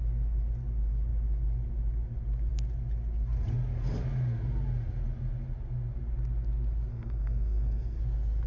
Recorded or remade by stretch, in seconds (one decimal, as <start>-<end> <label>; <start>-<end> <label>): 0.0-6.9 recorded; 6.9-8.0 remade; 8.0-8.5 recorded